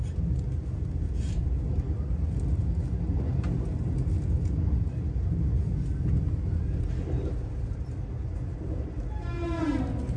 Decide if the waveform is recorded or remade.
recorded